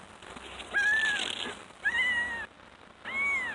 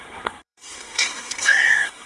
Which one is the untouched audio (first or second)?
first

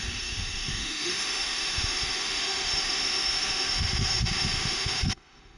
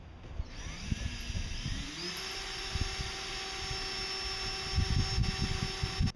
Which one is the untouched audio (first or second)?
second